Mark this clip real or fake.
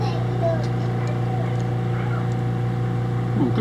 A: real